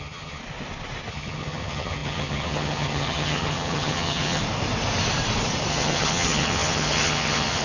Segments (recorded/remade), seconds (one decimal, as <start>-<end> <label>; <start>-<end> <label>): 0.0-0.4 remade; 0.4-1.1 recorded; 1.1-4.4 remade; 4.4-5.7 recorded; 5.7-7.6 remade